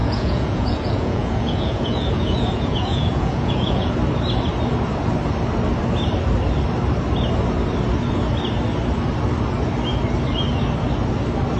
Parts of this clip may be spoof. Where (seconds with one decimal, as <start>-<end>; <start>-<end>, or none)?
0.0-3.9